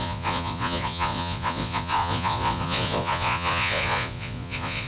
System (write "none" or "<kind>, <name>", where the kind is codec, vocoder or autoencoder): vocoder, Vocos